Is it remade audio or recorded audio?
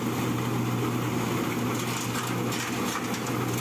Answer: recorded